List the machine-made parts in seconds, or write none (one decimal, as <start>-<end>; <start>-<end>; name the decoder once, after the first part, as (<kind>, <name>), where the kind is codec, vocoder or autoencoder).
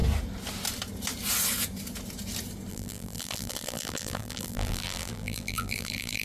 2.7-6.2 (vocoder, BigVGAN v2)